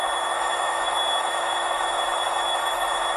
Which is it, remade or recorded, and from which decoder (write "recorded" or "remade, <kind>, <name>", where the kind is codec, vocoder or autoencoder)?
remade, autoencoder, DAC-VAE